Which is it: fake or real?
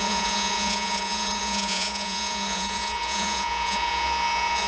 fake